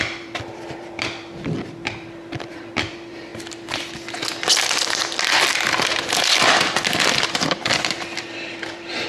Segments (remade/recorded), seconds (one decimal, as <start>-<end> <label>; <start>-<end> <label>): 0.0-3.3 remade; 3.3-7.4 recorded; 7.4-9.1 remade